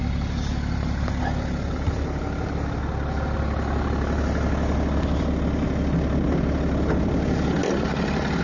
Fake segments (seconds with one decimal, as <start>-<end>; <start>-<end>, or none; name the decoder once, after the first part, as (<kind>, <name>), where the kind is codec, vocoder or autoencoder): none